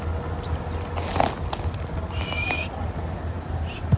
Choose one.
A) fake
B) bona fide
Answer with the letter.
B